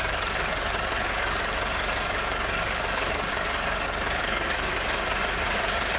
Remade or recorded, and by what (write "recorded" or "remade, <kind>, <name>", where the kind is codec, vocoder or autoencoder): remade, codec, DAC